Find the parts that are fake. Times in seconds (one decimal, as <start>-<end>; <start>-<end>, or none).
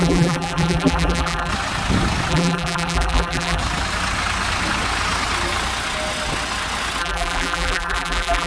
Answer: 0.0-1.5; 2.3-3.6; 7.0-8.5